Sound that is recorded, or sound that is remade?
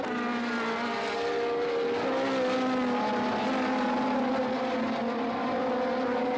recorded